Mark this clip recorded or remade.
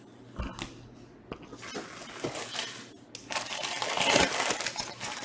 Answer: recorded